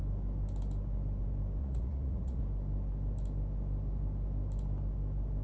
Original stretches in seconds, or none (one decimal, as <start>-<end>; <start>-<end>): 0.0-1.6; 2.4-5.4